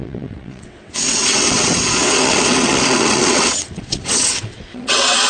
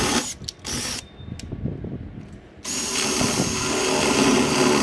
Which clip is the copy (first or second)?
first